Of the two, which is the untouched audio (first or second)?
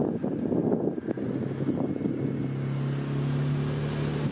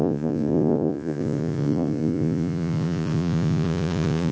first